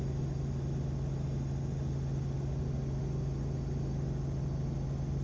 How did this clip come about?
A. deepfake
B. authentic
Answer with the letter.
B